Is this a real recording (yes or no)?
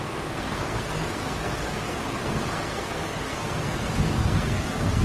no